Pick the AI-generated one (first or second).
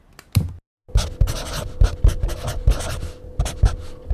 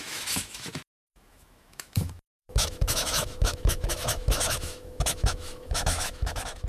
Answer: second